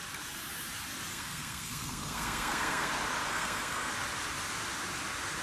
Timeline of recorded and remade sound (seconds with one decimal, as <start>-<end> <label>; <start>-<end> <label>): 0.0-1.1 recorded; 1.1-2.9 remade; 2.9-3.3 recorded; 3.3-3.9 remade; 3.9-5.4 recorded